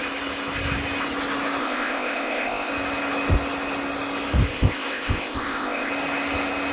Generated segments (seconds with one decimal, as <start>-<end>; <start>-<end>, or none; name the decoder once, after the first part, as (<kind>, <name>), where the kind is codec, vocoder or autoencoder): 1.6-2.7 (codec, ZipCodec); 4.5-5.9